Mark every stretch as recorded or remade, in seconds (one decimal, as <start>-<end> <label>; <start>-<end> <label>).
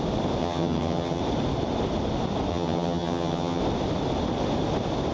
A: 0.0-0.4 recorded; 0.4-1.2 remade; 1.2-2.5 recorded; 2.5-3.6 remade; 3.6-5.1 recorded